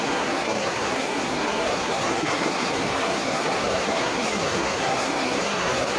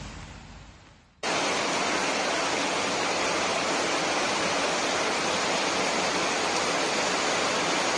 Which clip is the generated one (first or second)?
first